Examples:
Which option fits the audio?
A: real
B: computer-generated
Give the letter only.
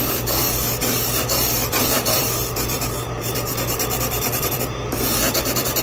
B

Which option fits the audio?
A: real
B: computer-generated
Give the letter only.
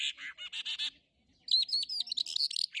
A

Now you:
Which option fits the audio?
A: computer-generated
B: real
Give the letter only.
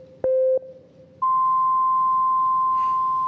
B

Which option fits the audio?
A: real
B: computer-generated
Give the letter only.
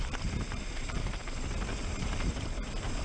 B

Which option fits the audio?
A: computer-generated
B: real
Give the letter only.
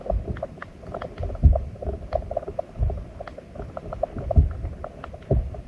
B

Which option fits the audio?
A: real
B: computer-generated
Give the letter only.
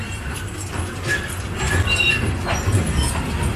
A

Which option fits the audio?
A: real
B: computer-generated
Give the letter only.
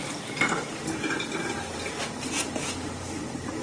A